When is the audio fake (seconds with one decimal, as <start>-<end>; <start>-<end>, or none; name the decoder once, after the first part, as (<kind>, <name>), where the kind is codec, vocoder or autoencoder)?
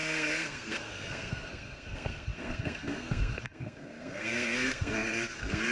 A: 0.0-5.7 (codec, SNAC)